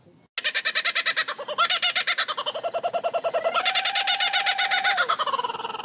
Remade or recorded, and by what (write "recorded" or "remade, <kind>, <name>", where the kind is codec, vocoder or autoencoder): recorded